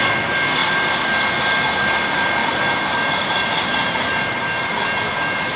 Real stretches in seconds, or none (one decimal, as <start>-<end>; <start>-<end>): 0.0-2.4